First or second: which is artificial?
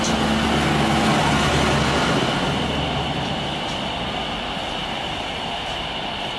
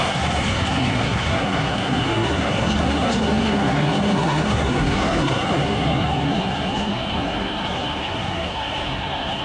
second